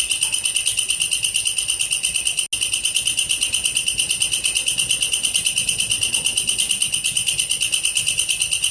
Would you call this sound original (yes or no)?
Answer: yes